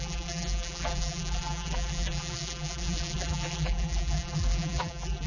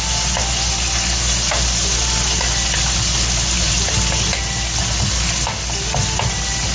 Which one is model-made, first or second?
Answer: first